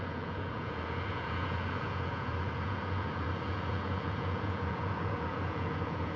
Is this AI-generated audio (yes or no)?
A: yes